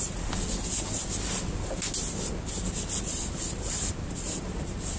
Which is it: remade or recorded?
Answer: recorded